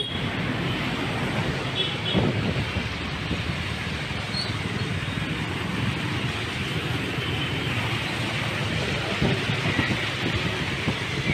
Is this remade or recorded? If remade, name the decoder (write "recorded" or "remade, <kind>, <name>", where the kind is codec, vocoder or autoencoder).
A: recorded